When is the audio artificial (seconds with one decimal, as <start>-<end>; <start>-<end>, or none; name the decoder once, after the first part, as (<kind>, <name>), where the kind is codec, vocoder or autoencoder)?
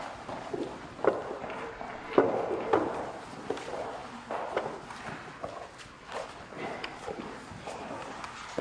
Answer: none